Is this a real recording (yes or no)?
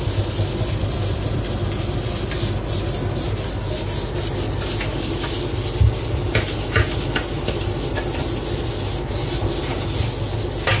yes